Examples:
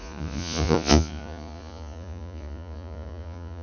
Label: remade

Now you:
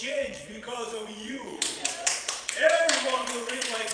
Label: remade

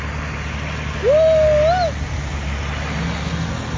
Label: recorded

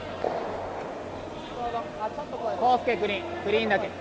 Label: recorded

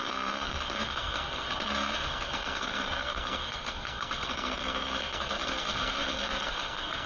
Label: remade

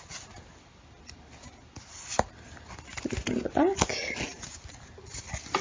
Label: recorded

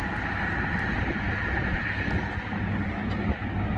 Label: recorded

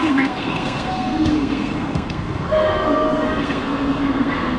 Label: remade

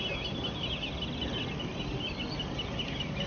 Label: recorded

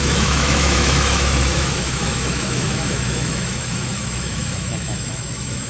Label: remade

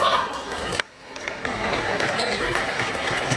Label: remade